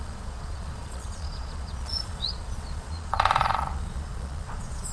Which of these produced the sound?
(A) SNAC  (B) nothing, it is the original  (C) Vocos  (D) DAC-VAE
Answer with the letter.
C